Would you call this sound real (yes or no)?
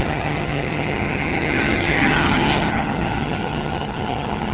no